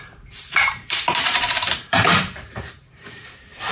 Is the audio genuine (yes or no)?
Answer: no